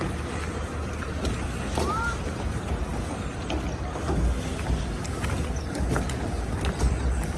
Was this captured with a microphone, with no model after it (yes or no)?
yes